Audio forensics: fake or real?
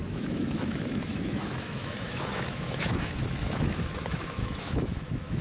fake